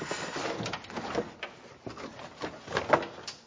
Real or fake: real